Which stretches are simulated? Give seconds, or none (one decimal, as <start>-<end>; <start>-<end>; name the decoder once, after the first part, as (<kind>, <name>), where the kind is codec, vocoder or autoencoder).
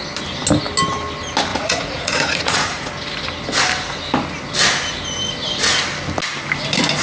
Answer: 1.5-2.9 (vocoder, Vocos)